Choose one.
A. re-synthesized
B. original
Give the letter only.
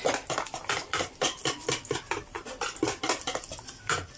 B